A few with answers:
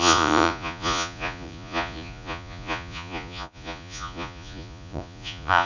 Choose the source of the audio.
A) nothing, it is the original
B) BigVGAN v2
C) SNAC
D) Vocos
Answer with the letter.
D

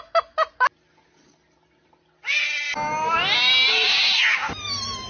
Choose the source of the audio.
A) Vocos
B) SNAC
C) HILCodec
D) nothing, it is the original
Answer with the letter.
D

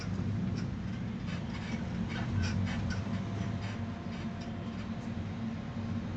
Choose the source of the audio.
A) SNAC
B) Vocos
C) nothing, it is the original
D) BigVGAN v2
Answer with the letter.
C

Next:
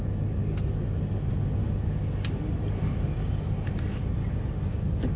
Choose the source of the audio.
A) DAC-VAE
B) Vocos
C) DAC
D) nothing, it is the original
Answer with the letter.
D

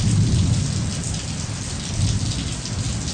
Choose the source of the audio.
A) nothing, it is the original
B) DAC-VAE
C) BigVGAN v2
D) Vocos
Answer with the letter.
A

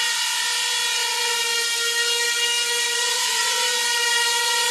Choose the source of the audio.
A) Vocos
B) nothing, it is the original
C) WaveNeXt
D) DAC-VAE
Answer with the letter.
B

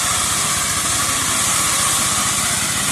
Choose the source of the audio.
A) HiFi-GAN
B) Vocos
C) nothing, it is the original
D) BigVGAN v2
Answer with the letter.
C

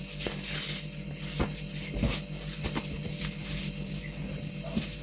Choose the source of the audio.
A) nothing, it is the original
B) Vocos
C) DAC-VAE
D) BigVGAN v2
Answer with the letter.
A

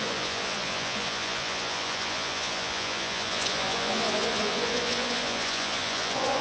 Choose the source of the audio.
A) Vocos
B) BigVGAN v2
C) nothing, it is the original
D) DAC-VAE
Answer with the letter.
A